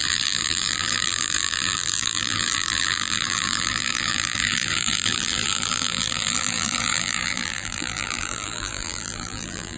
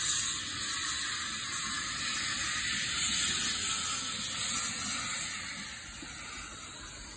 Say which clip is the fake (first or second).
first